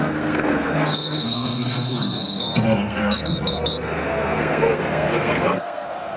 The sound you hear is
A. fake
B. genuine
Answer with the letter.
A